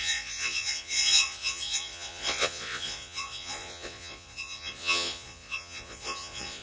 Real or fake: fake